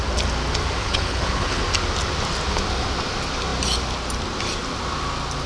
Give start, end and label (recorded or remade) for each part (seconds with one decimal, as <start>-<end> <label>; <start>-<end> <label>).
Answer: 0.0-0.8 recorded; 0.8-1.6 remade; 1.6-5.5 recorded